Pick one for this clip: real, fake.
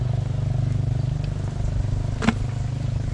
real